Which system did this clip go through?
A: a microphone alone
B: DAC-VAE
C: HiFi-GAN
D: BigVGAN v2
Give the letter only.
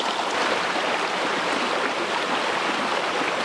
A